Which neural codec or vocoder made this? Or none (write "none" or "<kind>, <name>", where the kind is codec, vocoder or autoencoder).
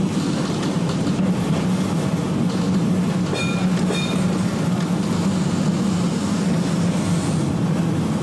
none